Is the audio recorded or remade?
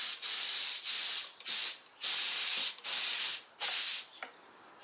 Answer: recorded